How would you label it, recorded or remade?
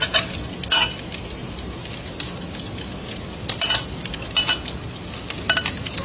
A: recorded